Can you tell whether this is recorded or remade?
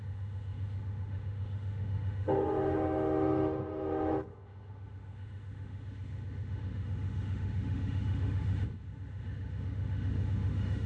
remade